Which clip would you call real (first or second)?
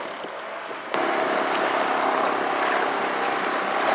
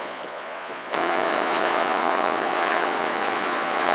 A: first